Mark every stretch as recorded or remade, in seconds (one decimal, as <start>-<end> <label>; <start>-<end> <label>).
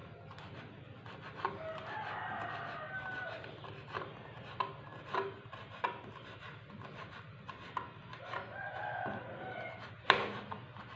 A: 0.0-11.0 recorded